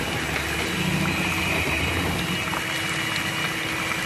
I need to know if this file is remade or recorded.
recorded